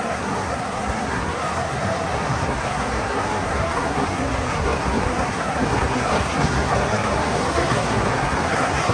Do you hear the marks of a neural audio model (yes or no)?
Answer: yes